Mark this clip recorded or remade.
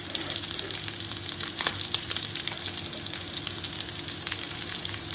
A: remade